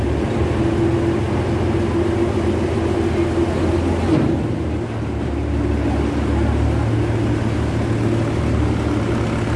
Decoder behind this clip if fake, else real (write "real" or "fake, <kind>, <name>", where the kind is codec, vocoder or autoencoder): real